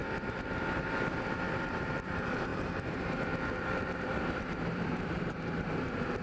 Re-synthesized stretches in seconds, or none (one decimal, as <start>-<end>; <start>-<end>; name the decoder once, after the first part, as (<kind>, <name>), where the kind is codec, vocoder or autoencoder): 0.7-6.2 (vocoder, BigVGAN v2)